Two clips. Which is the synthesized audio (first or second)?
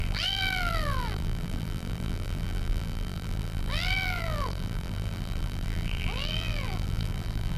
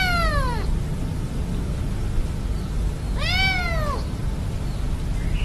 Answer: first